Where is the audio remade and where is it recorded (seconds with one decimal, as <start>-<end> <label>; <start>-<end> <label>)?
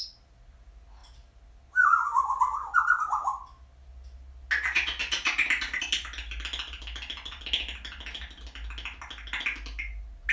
0.0-10.3 recorded